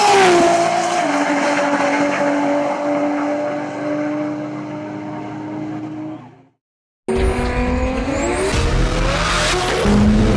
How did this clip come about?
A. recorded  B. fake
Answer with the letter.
A